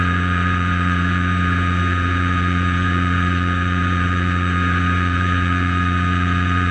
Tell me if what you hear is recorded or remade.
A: remade